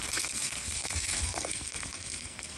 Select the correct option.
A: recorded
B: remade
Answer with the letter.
B